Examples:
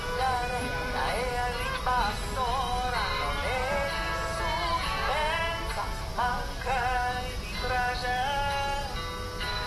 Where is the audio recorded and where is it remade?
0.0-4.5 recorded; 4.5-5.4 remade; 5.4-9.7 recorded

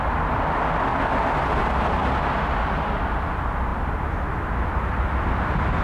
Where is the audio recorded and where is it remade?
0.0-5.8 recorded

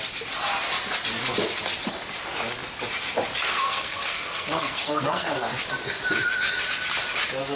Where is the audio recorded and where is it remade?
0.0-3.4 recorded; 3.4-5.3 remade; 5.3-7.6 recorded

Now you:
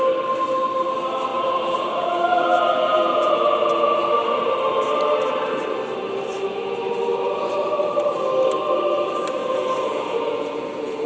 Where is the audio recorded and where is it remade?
0.0-1.3 recorded; 1.3-4.0 remade; 4.0-9.4 recorded; 9.4-11.1 remade

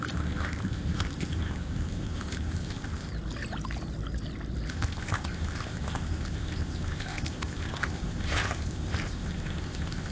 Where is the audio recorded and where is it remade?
0.0-3.1 remade; 3.1-4.7 recorded; 4.7-10.1 remade

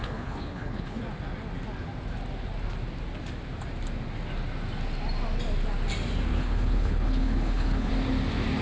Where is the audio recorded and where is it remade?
0.0-1.0 remade; 1.0-6.3 recorded; 6.3-7.9 remade; 7.9-8.6 recorded